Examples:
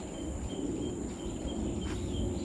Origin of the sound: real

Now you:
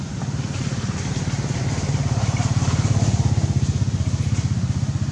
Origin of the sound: real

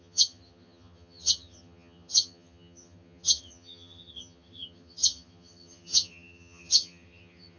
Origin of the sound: fake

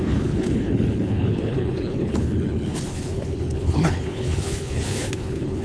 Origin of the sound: fake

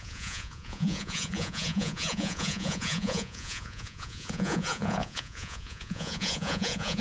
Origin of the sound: fake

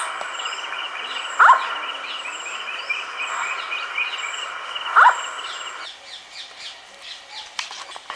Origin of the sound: real